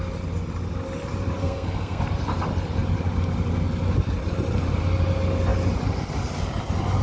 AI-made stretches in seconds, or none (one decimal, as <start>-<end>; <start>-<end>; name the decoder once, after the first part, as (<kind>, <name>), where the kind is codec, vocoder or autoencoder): 1.4-2.0 (codec, SNAC)